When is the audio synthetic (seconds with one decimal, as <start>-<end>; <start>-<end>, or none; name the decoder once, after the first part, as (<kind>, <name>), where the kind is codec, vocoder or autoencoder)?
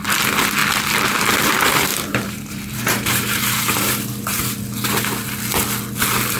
1.9-4.4 (vocoder, BigVGAN v2)